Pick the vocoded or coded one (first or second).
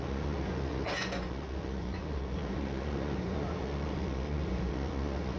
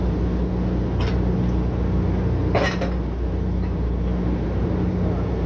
first